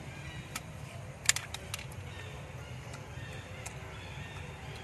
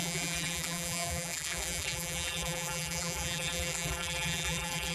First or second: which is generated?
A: second